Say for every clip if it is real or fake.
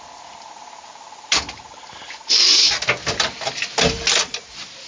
real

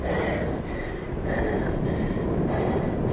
real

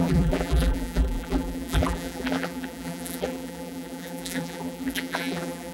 fake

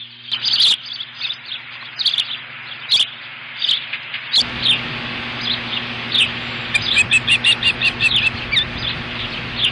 real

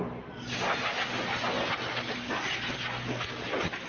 real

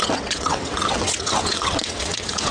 fake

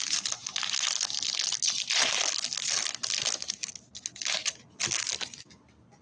real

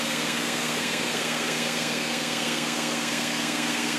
fake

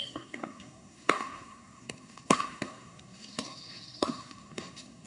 fake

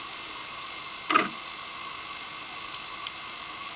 real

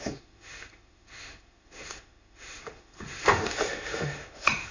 fake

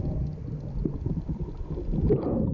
real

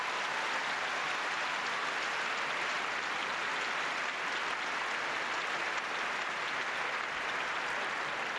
real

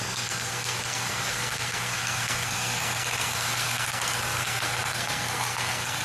fake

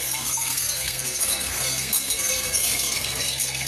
fake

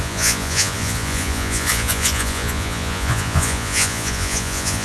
fake